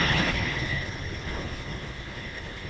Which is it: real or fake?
fake